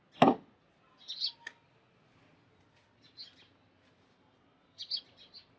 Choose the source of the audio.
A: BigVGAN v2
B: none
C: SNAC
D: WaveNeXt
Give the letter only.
B